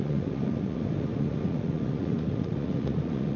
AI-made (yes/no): yes